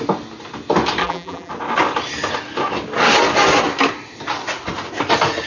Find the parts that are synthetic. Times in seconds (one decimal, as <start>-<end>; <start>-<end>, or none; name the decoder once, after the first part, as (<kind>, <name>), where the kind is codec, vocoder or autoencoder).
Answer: 1.0-1.5 (vocoder, BigVGAN v2)